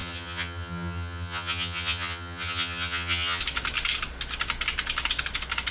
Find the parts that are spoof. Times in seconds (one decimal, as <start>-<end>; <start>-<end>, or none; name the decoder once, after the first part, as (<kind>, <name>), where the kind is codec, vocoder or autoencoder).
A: 0.0-3.4 (vocoder, HiFi-GAN)